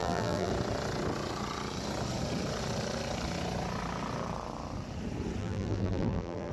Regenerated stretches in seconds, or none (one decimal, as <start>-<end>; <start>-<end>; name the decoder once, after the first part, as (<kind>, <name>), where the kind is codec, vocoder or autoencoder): 0.0-0.5 (vocoder, BigVGAN v2); 5.4-6.5